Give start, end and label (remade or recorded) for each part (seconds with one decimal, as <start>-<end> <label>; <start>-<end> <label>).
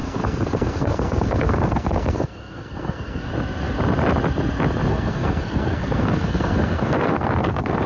0.0-3.3 remade; 3.3-4.9 recorded; 4.9-7.9 remade